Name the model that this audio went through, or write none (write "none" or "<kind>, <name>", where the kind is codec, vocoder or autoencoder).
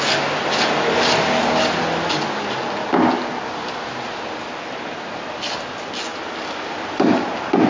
none